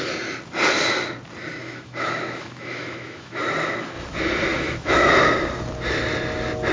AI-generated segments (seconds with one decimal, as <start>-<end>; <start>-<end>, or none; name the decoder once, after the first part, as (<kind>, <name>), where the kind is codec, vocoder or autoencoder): 1.6-3.4 (autoencoder, DAC-VAE); 4.5-5.1